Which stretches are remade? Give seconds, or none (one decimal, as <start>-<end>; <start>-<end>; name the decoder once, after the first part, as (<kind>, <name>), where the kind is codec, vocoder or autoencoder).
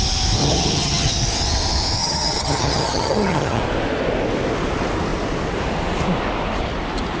0.4-1.1 (vocoder, HiFi-GAN); 2.0-3.6